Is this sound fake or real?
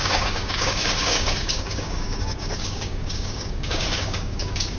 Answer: fake